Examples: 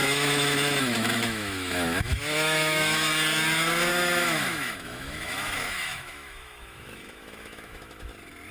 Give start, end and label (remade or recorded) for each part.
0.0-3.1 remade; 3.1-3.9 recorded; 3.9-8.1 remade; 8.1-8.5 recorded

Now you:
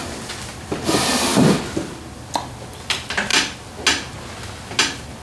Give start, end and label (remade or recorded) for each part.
0.0-5.2 recorded

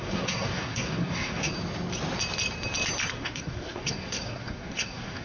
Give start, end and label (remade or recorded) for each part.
0.0-1.5 remade; 1.5-3.1 recorded; 3.1-5.2 remade